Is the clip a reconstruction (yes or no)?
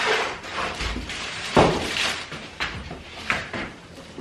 yes